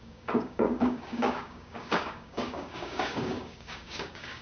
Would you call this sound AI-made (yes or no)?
yes